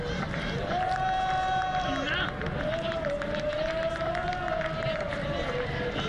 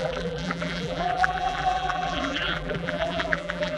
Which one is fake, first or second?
second